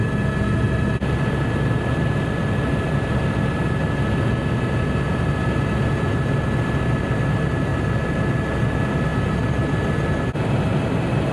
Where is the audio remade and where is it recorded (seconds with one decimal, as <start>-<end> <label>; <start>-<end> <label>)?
0.0-11.3 recorded